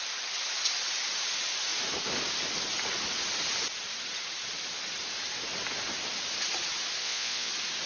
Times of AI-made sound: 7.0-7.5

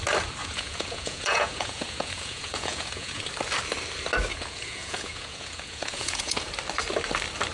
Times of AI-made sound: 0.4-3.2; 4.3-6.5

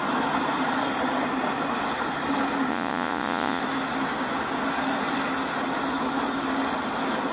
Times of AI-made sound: 2.7-3.6

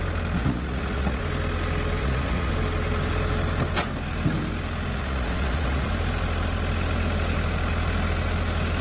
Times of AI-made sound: 0.4-1.2; 2.0-2.5; 4.9-5.9

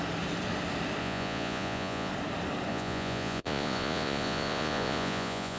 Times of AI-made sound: 1.0-2.1; 2.7-5.6

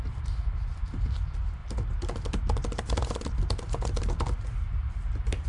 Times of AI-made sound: none

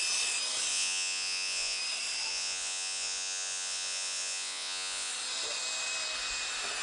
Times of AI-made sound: 0.7-1.8; 2.3-5.1

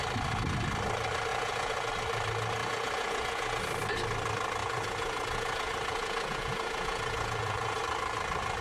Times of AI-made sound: 1.3-1.9; 2.6-3.6; 4.6-7.8